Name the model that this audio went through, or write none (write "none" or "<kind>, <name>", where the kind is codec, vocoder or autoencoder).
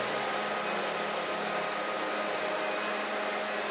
none